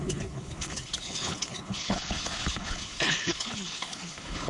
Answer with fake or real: fake